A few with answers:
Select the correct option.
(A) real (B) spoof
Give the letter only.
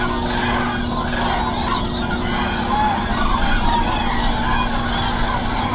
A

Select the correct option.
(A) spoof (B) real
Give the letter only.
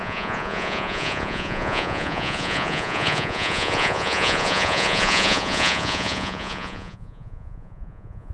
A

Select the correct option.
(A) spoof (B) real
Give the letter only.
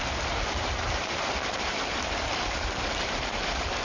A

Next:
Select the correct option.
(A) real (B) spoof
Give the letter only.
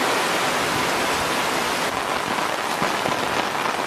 A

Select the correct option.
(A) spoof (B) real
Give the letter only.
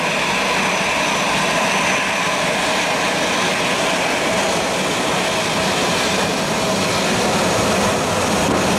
B